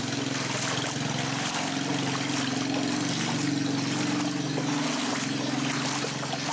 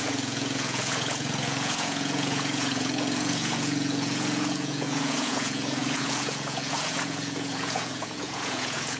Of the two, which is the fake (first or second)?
second